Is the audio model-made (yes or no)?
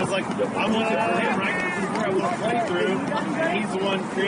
no